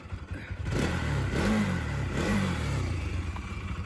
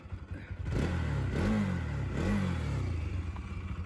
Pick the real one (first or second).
second